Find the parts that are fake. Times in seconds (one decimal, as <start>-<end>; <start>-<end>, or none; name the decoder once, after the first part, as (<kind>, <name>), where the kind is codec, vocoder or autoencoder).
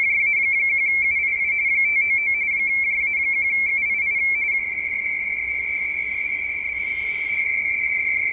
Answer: none